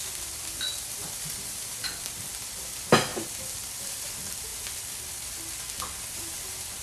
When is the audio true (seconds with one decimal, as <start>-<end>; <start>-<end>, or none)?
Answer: none